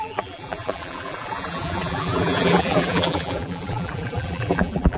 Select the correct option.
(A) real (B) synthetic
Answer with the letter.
B